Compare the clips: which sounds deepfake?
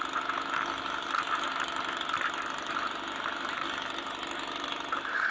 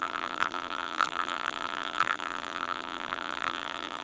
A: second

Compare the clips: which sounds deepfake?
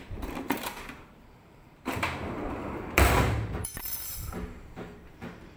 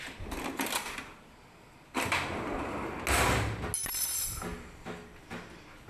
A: first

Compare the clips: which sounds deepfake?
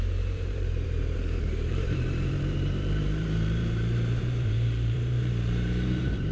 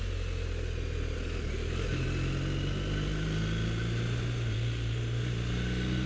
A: first